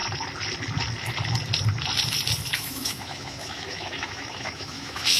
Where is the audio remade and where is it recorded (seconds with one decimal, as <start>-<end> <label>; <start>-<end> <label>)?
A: 0.0-2.5 recorded; 2.5-5.2 remade